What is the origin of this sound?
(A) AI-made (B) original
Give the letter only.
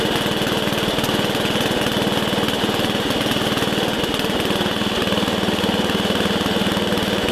B